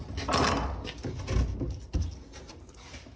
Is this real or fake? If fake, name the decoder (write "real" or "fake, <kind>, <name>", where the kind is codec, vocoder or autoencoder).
real